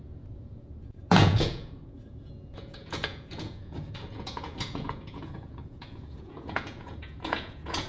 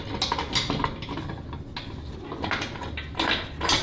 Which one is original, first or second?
second